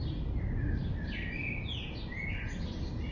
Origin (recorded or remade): recorded